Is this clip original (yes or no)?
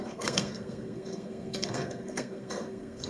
no